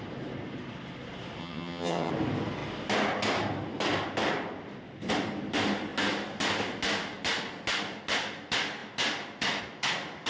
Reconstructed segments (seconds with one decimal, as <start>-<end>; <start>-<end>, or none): 1.4-2.1